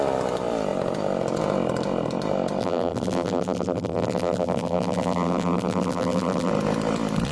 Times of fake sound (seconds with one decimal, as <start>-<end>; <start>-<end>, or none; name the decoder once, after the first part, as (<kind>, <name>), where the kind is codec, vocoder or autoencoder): 2.6-6.5 (vocoder, BigVGAN v2)